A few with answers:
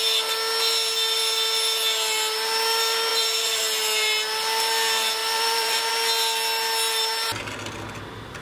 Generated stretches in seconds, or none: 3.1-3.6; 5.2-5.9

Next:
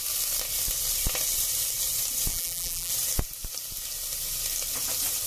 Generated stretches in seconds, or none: 2.3-2.9